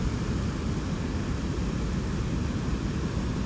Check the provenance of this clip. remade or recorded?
recorded